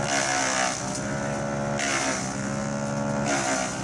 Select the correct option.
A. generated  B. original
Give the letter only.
B